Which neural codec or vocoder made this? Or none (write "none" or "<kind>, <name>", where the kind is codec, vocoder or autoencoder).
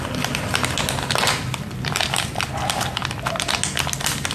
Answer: none